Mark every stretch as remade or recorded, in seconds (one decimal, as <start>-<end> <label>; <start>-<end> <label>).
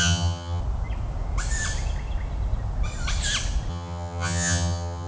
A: 0.0-0.6 remade; 0.6-3.7 recorded; 3.7-5.1 remade